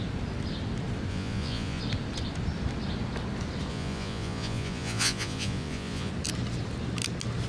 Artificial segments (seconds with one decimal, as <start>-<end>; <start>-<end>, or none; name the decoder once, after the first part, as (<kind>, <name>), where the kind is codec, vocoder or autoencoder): 1.1-1.8 (vocoder, Vocos); 3.7-6.1